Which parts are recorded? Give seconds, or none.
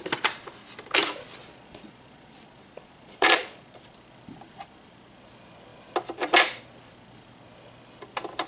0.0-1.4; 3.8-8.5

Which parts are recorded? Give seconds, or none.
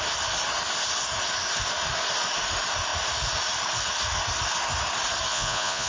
0.0-5.3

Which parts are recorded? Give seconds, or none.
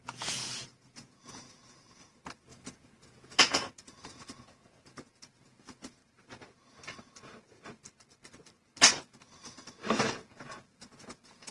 6.0-10.1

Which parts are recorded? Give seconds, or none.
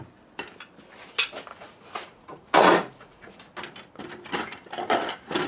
0.0-1.5; 3.4-5.5